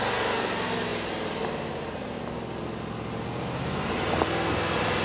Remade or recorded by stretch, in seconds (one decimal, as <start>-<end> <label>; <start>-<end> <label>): 0.0-5.0 recorded